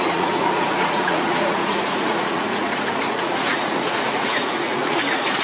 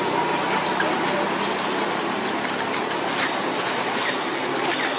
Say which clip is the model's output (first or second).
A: first